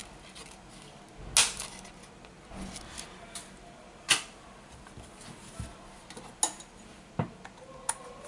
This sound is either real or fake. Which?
real